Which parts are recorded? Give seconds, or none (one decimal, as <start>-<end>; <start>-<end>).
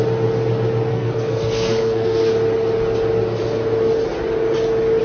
0.0-0.9; 2.3-5.0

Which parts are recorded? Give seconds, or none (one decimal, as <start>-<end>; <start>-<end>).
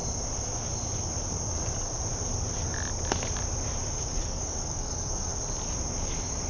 0.0-3.9; 5.3-6.5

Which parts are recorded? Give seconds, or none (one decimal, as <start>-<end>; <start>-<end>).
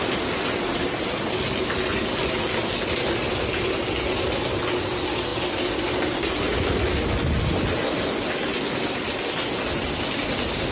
0.0-0.7; 2.3-10.7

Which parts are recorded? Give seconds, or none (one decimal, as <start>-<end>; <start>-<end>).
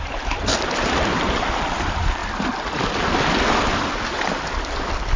0.5-1.8; 2.2-5.2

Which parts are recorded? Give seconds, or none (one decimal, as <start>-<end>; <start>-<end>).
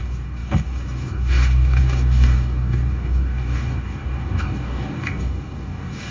none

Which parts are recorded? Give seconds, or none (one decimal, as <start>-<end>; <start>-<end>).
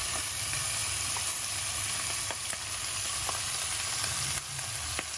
0.0-5.2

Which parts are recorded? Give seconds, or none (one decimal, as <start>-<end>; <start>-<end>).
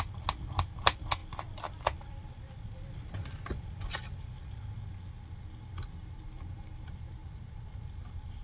0.0-1.2; 4.5-7.2; 7.8-8.4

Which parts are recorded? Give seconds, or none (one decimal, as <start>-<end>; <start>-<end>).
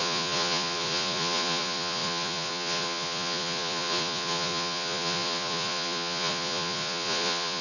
none